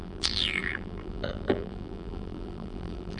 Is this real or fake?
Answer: fake